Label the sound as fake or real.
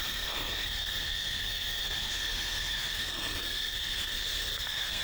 fake